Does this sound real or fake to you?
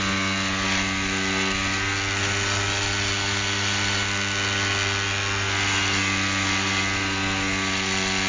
real